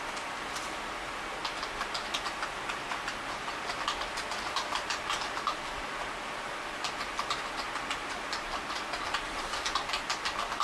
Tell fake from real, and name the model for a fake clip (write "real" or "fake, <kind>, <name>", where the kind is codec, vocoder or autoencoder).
real